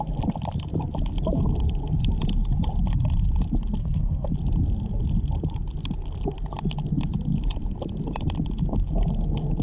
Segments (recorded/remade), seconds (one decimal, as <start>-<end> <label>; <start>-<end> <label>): 0.0-3.8 recorded; 3.8-4.3 remade; 4.3-9.6 recorded